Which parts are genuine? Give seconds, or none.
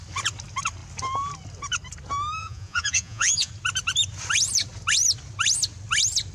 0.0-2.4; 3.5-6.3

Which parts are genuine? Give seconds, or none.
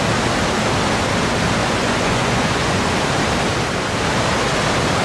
0.0-1.6; 2.9-5.0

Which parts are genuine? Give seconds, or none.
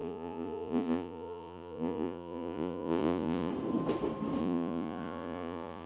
3.5-4.4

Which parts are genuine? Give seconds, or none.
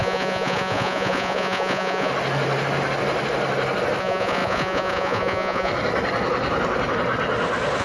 2.1-4.0; 5.7-7.8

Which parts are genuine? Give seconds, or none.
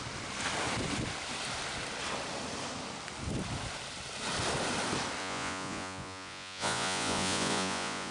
0.0-5.2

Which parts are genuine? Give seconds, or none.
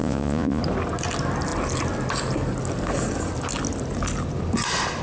0.6-5.0